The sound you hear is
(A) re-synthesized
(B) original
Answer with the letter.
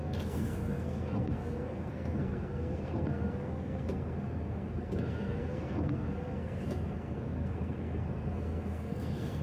A